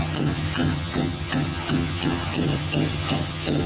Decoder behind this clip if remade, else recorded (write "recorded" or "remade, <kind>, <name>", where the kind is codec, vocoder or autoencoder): remade, vocoder, HiFi-GAN